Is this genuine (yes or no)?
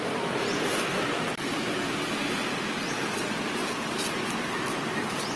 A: yes